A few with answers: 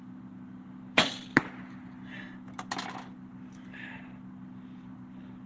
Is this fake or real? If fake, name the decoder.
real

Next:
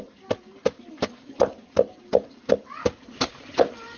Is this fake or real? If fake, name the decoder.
real